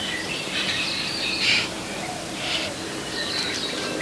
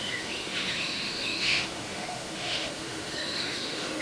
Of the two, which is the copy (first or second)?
second